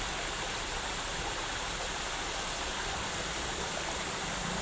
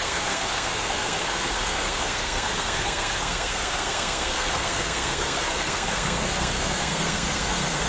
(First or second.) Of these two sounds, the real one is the first